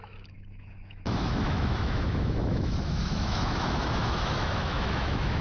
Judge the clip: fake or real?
fake